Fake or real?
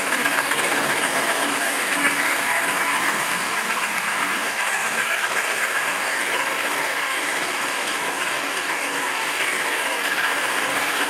fake